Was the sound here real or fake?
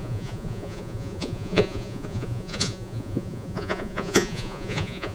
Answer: fake